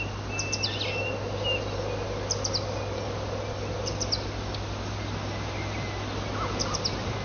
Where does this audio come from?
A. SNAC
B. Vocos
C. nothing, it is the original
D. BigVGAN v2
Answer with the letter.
C